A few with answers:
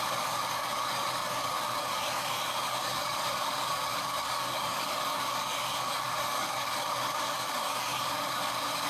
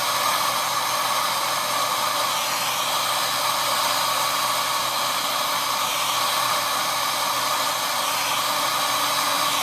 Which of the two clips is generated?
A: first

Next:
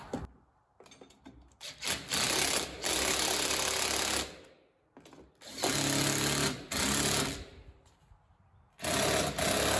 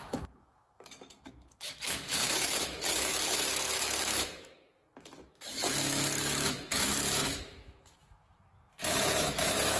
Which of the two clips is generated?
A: second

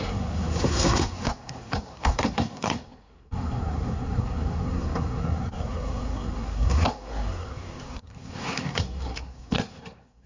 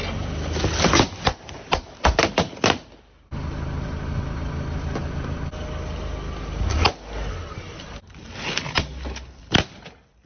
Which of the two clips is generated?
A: first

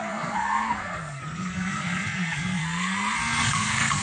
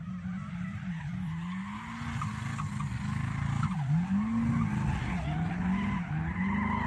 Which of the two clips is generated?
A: first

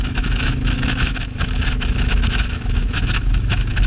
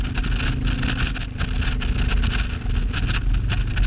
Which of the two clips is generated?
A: first